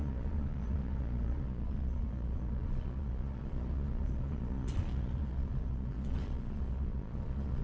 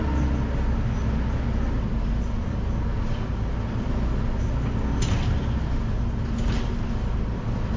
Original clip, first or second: second